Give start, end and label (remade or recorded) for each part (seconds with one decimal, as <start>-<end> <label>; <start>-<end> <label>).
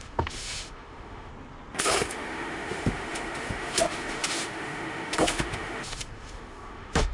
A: 0.0-1.3 remade; 1.3-1.8 recorded; 1.8-7.1 remade